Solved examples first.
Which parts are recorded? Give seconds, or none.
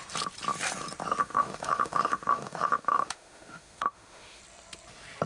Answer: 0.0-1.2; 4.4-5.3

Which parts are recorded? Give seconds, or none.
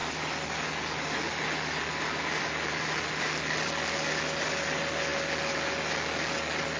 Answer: 0.0-6.8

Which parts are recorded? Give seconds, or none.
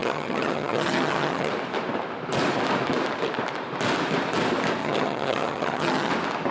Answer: 1.5-4.8; 6.1-6.5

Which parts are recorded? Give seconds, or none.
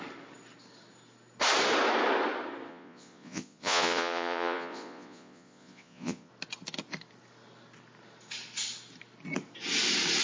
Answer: 0.0-2.7; 6.3-10.2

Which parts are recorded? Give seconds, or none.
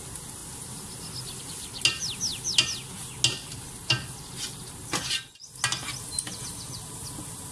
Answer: 0.0-7.5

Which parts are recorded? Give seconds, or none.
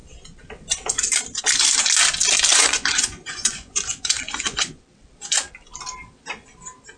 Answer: 0.0-2.5; 4.8-7.0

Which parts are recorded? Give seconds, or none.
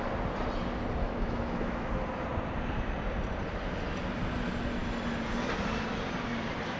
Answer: 0.0-1.0; 1.9-6.8